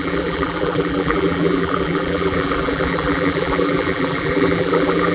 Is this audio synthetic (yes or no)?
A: yes